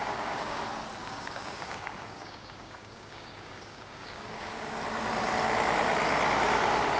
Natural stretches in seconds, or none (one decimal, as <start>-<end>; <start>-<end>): 0.6-1.0; 4.8-7.0